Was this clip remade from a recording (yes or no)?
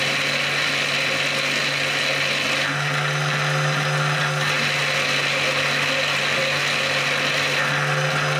no